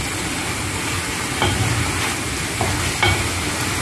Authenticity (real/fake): real